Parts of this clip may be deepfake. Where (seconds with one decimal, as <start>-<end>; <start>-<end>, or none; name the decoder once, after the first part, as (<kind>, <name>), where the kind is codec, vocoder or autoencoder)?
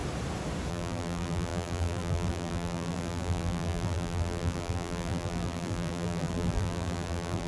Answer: 0.7-7.5 (vocoder, BigVGAN v2)